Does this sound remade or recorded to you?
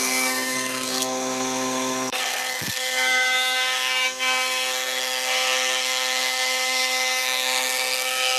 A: remade